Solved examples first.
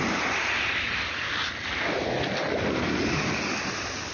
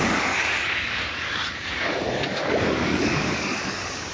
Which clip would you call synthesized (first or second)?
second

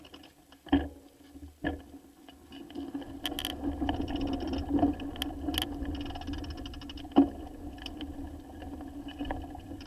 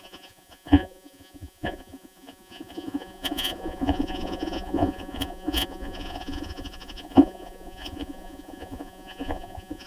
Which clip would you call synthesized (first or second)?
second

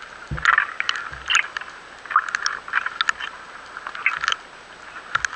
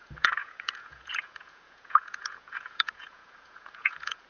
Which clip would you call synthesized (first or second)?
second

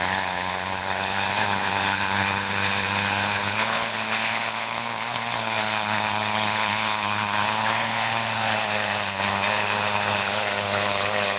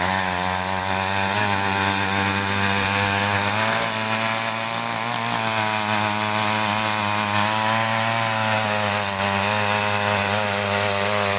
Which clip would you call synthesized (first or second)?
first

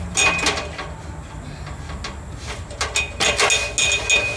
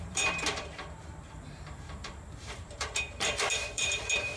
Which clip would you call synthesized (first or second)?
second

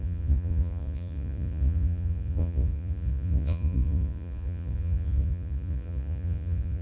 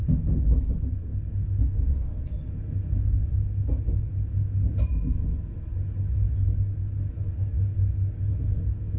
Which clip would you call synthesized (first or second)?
first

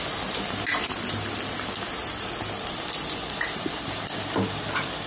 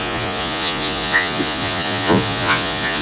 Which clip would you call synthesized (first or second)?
second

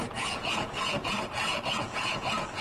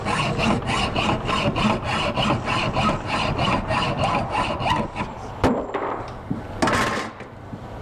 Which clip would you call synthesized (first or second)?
first